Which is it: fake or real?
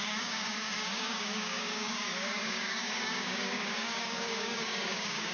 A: fake